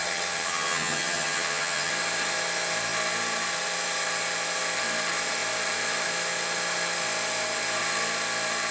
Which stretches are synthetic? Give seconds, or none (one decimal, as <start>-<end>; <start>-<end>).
0.0-1.9